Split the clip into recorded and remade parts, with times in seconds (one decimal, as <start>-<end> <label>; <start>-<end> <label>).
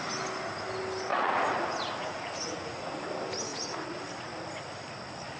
0.0-1.1 recorded; 1.1-2.8 remade; 2.8-3.5 recorded; 3.5-4.0 remade; 4.0-5.4 recorded